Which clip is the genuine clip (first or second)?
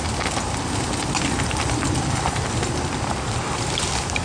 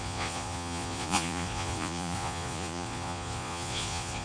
first